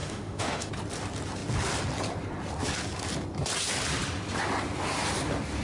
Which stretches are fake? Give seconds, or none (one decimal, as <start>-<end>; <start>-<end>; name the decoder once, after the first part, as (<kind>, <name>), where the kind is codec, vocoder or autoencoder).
0.0-0.7 (autoencoder, DAC-VAE)